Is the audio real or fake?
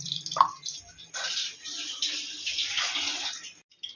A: real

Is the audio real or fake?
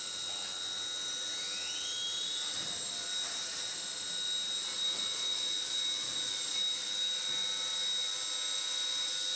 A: real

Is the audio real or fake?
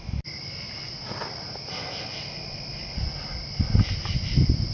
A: real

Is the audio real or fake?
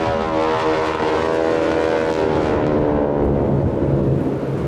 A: real